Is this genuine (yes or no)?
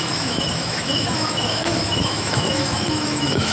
no